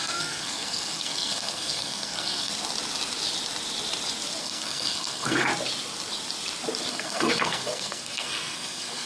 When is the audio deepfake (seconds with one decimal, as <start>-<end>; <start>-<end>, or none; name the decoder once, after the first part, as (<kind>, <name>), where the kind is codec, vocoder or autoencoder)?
0.0-2.5 (codec, SNAC); 4.4-5.5; 6.9-9.1